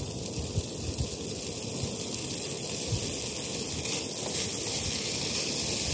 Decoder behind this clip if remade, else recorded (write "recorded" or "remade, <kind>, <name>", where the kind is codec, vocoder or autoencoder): recorded